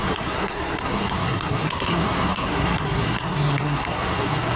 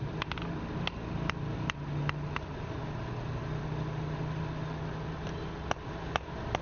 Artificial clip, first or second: first